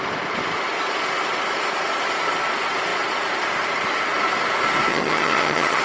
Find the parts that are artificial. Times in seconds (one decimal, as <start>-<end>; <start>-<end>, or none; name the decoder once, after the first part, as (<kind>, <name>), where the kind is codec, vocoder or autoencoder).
4.9-5.8 (vocoder, HiFi-GAN)